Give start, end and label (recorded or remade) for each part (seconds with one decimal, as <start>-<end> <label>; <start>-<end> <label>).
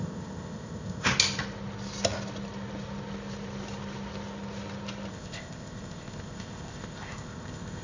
0.0-1.1 remade; 1.1-5.1 recorded; 5.1-7.8 remade